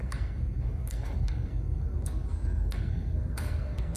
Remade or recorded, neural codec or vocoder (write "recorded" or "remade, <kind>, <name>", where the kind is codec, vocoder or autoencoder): remade, codec, SNAC